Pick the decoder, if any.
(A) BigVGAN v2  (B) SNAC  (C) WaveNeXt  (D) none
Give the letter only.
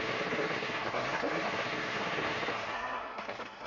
B